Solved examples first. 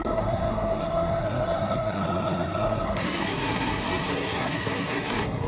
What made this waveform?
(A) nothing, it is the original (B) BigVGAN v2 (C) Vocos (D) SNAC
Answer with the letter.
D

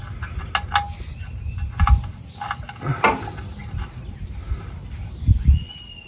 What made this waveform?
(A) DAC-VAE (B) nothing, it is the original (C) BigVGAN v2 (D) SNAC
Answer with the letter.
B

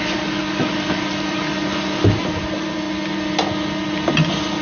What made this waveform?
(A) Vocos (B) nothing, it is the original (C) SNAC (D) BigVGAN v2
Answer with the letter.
B